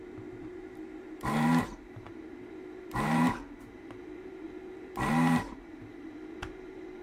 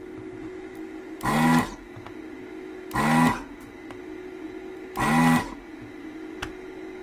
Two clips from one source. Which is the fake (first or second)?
first